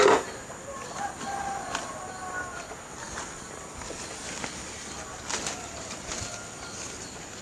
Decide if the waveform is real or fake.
real